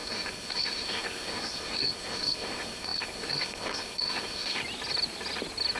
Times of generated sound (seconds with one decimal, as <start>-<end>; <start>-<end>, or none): 0.0-4.6